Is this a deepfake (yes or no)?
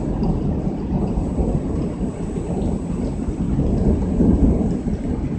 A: no